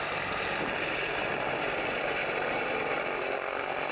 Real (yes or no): no